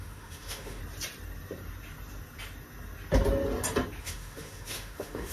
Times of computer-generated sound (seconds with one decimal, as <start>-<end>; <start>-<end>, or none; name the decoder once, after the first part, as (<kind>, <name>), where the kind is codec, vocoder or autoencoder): 0.0-0.8 (autoencoder, DAC-VAE); 4.0-5.3